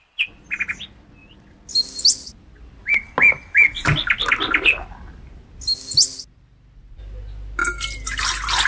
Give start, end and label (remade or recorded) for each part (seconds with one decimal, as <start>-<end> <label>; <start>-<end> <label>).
0.0-8.7 recorded